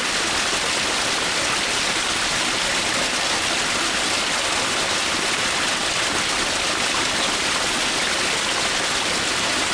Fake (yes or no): no